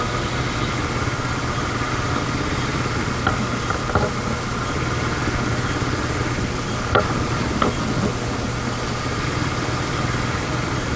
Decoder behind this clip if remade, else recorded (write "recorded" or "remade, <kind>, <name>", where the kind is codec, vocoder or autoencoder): recorded